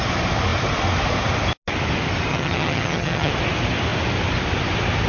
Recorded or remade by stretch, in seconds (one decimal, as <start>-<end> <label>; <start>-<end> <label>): 0.0-2.3 recorded; 2.3-3.3 remade; 3.3-5.1 recorded